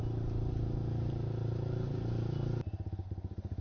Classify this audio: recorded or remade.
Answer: recorded